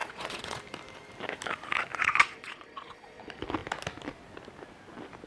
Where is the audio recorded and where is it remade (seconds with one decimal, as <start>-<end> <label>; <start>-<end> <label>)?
0.0-0.6 remade; 0.6-1.9 recorded; 1.9-3.2 remade; 3.2-5.3 recorded